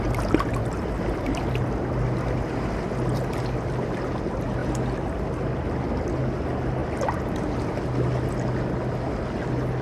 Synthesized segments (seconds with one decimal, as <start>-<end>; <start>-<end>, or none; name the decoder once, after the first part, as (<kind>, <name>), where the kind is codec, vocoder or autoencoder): 0.6-1.5 (vocoder, BigVGAN v2)